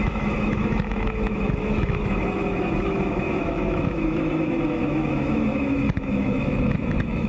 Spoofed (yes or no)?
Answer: yes